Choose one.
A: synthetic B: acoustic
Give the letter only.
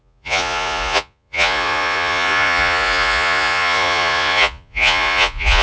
A